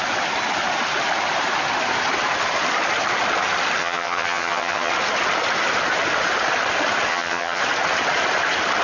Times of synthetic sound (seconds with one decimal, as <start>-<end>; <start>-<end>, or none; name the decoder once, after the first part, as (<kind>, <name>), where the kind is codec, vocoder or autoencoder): 3.8-4.9 (vocoder, HiFi-GAN); 7.1-7.6